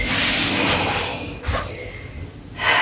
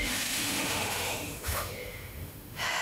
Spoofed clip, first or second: second